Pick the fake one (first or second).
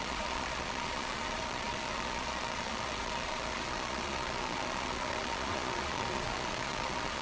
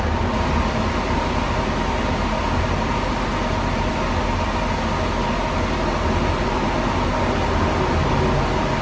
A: first